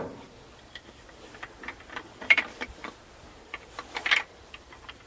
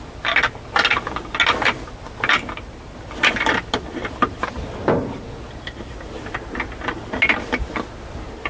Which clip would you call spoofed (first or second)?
first